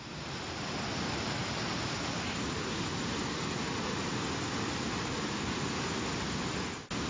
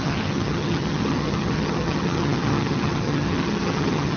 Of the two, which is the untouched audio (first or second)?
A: first